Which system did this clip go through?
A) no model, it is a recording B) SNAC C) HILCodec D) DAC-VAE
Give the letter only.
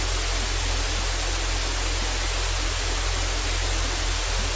A